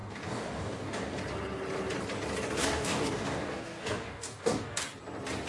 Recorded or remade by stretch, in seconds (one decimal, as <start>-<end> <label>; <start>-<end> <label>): 0.0-1.2 remade; 1.2-2.6 recorded; 2.6-4.8 remade; 4.8-5.5 recorded